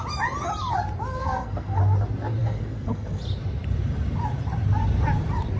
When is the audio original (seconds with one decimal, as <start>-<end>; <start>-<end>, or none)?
0.0-1.2; 1.8-2.4; 3.2-5.6

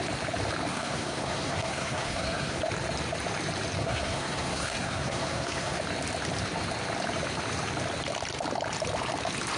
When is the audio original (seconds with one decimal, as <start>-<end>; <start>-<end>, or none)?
0.0-0.7; 2.6-3.8; 5.8-9.6